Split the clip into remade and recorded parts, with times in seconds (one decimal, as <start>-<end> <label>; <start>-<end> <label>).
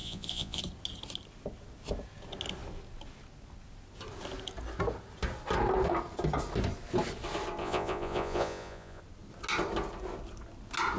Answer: 0.0-0.6 remade; 0.6-7.6 recorded; 7.6-9.0 remade; 9.0-11.0 recorded